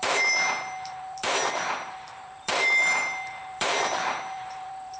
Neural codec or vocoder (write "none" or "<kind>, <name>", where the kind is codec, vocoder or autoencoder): vocoder, BigVGAN v2